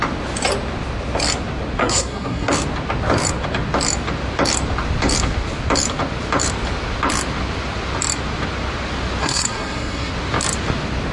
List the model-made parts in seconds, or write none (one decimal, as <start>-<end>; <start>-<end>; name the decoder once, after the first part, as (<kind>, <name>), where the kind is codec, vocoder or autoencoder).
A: 1.8-2.5 (codec, SNAC); 9.2-10.1